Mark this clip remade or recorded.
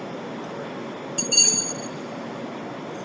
recorded